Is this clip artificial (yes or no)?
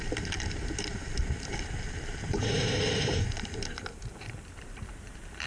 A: yes